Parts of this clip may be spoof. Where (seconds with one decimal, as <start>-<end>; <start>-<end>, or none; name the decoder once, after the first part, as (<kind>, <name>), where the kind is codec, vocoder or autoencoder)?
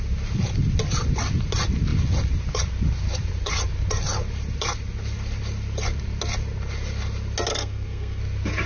7.5-8.2 (codec, SNAC)